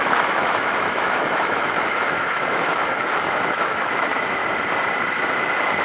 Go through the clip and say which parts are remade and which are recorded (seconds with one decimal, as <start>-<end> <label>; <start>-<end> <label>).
0.0-4.4 remade; 4.4-5.1 recorded; 5.1-5.8 remade